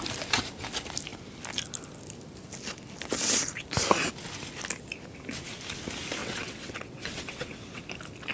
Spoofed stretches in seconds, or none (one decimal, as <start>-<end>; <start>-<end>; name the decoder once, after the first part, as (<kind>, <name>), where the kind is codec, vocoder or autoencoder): 6.2-7.8 (vocoder, WaveNeXt)